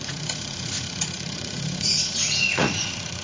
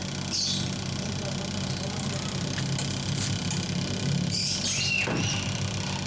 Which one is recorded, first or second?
second